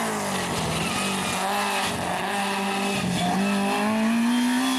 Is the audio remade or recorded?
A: recorded